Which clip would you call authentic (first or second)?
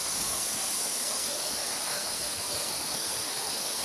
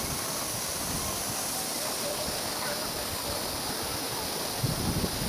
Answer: second